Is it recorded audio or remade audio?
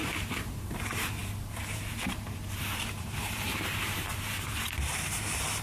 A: remade